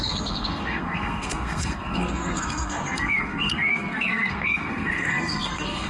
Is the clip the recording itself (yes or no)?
no